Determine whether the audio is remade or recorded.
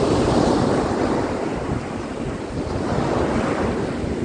recorded